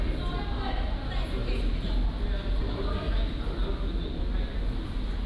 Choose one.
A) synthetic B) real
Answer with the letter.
B